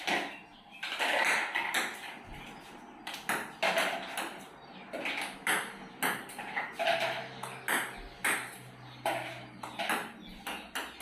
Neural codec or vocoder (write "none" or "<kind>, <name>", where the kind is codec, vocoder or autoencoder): none